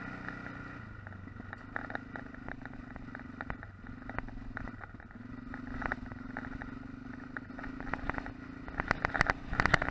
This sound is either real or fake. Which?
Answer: real